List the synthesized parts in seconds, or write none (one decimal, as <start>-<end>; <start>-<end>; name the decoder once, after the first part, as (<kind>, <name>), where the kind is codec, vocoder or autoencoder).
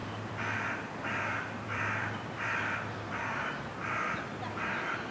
0.0-3.1 (vocoder, BigVGAN v2)